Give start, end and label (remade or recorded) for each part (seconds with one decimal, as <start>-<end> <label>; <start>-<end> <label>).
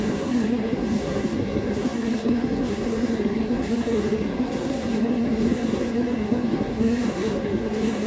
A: 0.0-8.1 remade